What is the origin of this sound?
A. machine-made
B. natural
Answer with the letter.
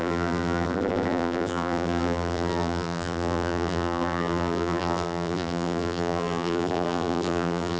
A